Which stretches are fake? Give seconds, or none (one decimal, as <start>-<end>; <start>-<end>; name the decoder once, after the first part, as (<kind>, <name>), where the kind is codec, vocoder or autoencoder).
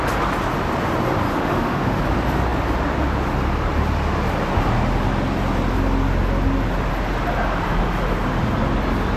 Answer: 1.3-2.0 (autoencoder, DAC-VAE)